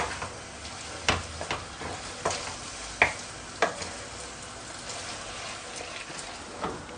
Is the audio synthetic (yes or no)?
no